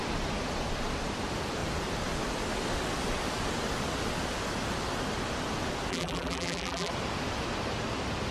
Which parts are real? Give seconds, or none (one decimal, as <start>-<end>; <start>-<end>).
0.0-5.9; 6.9-8.3